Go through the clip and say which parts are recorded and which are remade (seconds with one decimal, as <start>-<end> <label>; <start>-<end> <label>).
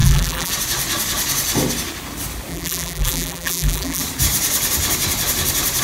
0.0-0.5 remade; 0.5-2.5 recorded; 2.5-4.0 remade; 4.0-5.8 recorded